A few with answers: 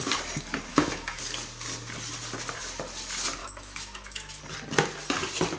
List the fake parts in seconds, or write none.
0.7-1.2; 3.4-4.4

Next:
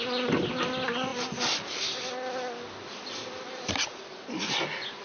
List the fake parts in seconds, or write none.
none

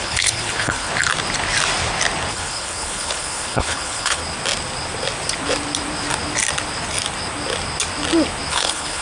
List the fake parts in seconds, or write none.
0.0-0.9; 2.3-4.2; 8.5-9.0